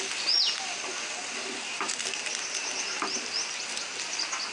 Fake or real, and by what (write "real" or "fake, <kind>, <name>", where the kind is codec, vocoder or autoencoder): real